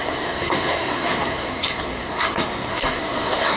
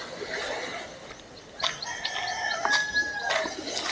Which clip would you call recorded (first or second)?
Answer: second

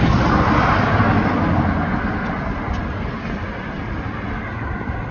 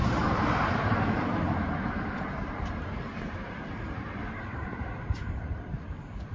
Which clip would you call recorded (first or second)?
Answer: first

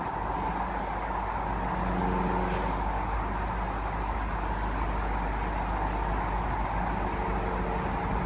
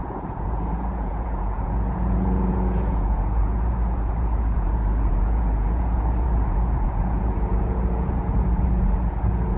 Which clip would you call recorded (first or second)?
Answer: first